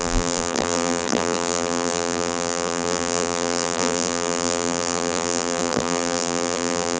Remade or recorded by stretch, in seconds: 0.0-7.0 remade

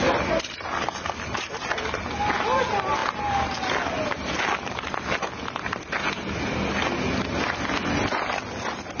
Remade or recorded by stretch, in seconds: 0.0-9.0 recorded

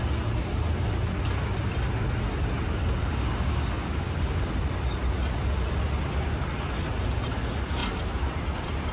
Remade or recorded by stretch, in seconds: 0.0-3.0 recorded; 3.0-4.5 remade; 4.5-8.9 recorded

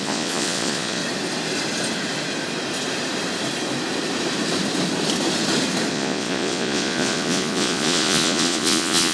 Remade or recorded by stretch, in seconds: 0.0-1.0 remade; 1.0-5.9 recorded; 5.9-9.1 remade

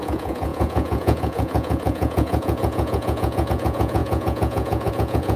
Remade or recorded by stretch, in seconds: 0.0-5.4 remade

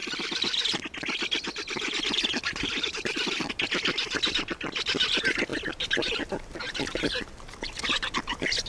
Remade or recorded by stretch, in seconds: 0.0-8.7 recorded